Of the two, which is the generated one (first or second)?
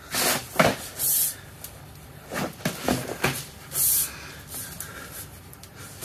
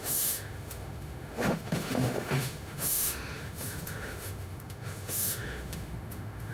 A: second